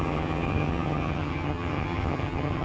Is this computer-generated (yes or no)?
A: yes